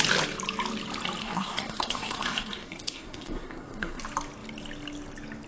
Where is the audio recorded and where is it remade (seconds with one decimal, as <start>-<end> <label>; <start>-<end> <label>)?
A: 0.0-1.2 recorded; 1.2-4.0 remade; 4.0-5.5 recorded